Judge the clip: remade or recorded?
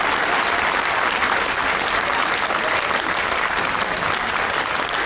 recorded